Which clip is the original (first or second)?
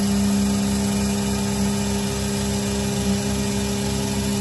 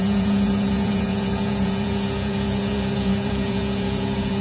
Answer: first